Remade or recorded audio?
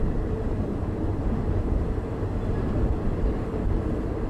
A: recorded